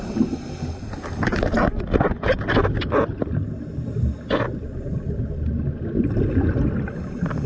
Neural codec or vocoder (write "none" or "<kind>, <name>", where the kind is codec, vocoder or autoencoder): none